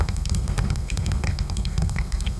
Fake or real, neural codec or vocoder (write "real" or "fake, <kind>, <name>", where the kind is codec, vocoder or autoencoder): fake, codec, SNAC